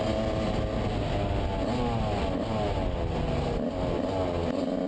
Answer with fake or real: real